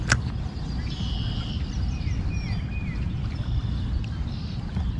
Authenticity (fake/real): real